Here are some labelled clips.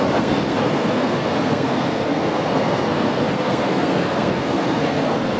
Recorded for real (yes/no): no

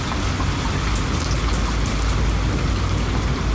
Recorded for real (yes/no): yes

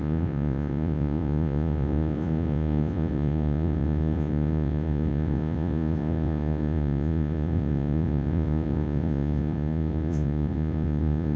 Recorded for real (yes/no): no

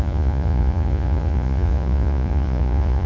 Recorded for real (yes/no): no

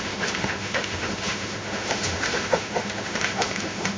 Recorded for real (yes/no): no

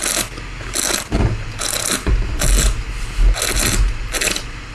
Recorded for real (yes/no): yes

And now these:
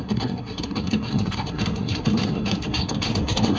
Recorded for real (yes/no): no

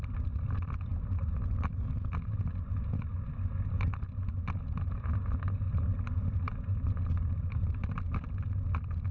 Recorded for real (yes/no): yes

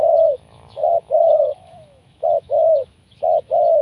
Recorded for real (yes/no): no